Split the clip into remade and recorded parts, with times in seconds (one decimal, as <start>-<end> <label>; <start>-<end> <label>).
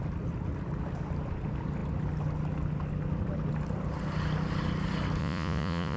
0.0-5.2 recorded; 5.2-6.0 remade